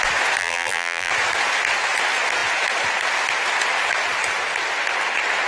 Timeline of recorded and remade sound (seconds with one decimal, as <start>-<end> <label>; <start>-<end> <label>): 0.0-0.4 recorded; 0.4-1.1 remade; 1.1-5.5 recorded